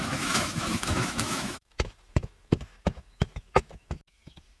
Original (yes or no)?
no